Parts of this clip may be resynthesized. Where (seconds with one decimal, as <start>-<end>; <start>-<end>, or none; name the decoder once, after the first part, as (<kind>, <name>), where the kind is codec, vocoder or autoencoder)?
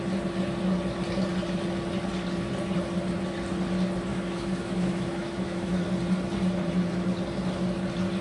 4.1-5.8 (autoencoder, DAC-VAE)